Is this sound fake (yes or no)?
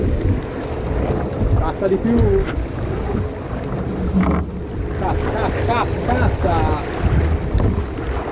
no